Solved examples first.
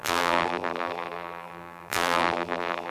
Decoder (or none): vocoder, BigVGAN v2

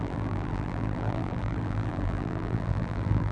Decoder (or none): vocoder, BigVGAN v2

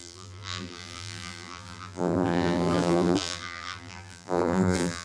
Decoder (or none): vocoder, BigVGAN v2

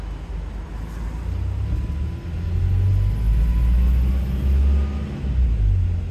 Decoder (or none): none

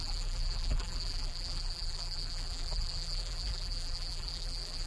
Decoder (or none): vocoder, BigVGAN v2